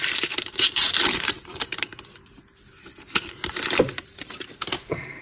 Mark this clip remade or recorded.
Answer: remade